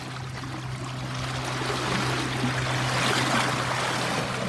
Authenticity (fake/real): real